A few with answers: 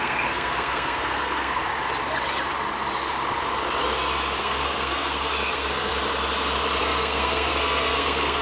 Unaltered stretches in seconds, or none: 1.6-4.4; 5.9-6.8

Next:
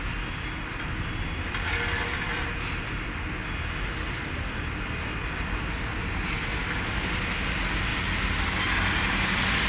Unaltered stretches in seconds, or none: 0.0-9.7

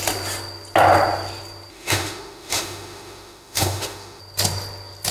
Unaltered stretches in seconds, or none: 0.0-1.7; 4.2-5.1

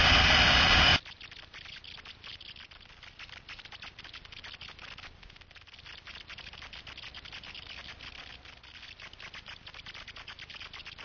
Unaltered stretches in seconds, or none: 0.0-11.0

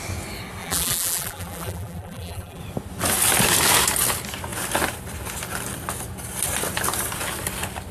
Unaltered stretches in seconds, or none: 0.0-0.6; 2.6-7.9

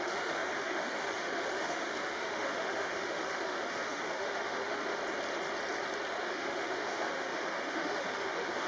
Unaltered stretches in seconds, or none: 5.0-6.2

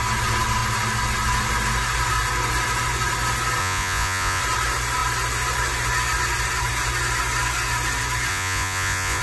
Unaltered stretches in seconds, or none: 0.0-3.6; 4.4-8.3

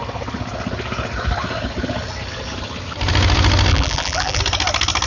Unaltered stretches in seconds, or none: 0.0-3.7; 4.4-5.1